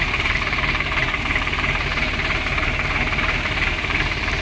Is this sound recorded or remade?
remade